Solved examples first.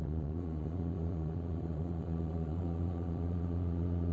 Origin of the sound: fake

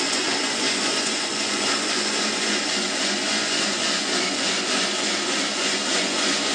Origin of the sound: fake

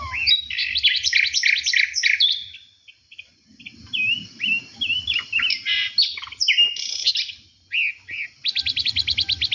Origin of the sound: real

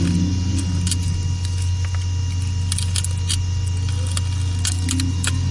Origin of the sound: real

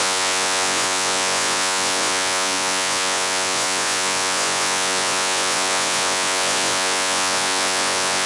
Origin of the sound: fake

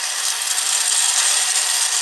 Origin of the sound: real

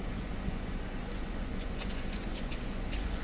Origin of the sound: fake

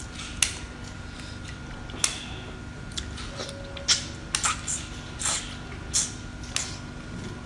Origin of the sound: real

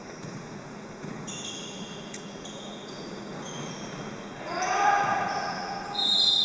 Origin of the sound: fake